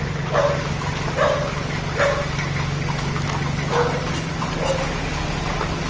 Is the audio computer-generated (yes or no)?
no